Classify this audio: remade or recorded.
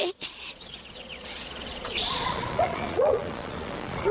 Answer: remade